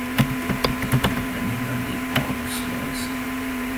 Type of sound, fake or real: fake